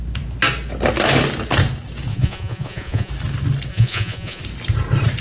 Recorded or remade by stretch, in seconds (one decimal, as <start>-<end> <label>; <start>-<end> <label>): 0.0-2.1 recorded; 2.1-3.1 remade; 3.1-3.7 recorded; 3.7-4.4 remade; 4.4-5.2 recorded